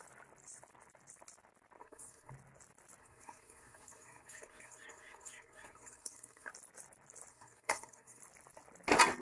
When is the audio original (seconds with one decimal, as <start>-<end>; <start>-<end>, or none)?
0.0-1.8; 2.3-3.0; 6.5-7.3; 8.2-9.2